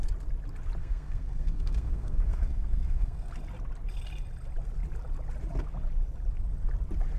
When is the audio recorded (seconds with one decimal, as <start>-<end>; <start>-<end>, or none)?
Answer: 0.0-0.8; 3.3-7.2